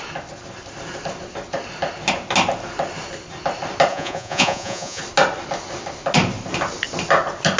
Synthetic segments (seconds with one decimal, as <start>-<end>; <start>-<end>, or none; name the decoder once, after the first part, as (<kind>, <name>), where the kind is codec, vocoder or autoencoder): 3.9-5.0 (vocoder, Vocos)